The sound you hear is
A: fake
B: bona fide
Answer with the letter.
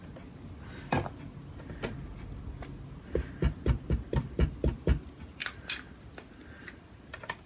B